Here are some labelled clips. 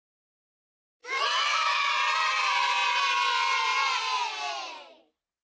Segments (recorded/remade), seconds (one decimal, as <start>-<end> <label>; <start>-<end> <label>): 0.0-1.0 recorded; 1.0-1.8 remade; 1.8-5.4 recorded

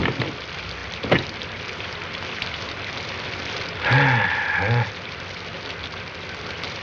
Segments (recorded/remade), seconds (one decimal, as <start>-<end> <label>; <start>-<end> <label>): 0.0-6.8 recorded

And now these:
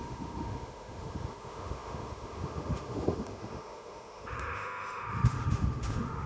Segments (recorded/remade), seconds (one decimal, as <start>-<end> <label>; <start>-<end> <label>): 0.0-6.3 remade